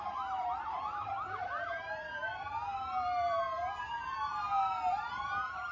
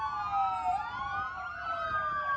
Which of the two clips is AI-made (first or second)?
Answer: first